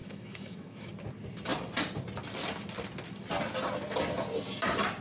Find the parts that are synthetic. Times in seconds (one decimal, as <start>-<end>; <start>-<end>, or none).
0.0-0.9